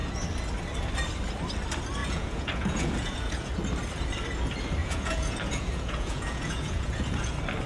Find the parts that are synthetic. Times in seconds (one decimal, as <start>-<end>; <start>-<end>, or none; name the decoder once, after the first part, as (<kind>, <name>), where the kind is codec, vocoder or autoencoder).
2.0-3.5 (vocoder, Vocos); 4.8-7.3